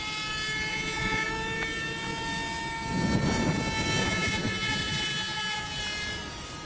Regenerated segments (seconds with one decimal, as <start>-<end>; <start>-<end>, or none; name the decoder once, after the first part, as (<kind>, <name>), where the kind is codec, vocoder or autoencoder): 0.7-1.3 (vocoder, Vocos); 4.0-5.8